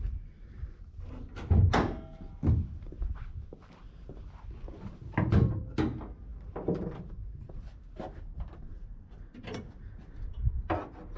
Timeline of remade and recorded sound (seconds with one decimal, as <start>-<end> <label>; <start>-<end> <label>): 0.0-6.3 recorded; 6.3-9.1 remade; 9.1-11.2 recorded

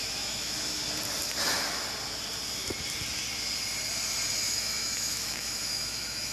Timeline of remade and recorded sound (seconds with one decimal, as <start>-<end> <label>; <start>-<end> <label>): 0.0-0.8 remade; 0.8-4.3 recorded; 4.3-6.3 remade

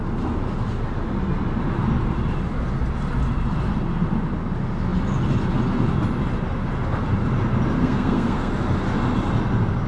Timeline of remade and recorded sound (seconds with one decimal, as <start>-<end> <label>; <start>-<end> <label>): 0.0-7.8 recorded; 7.8-8.5 remade; 8.5-9.9 recorded

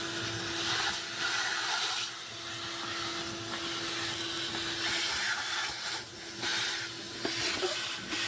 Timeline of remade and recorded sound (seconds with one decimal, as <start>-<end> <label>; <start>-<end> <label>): 0.0-8.3 recorded

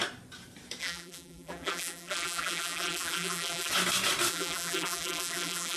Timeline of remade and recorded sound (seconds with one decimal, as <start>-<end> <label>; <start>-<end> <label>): 0.0-0.8 recorded; 0.8-3.7 remade; 3.7-4.3 recorded; 4.3-5.8 remade

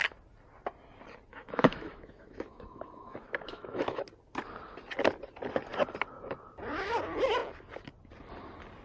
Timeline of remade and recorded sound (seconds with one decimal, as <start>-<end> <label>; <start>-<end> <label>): 0.0-1.3 recorded; 1.3-4.0 remade; 4.0-8.8 recorded